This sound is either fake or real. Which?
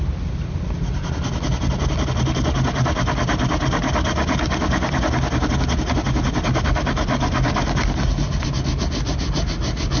real